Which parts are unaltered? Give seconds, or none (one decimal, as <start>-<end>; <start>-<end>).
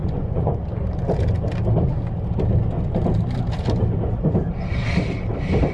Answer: 0.6-5.7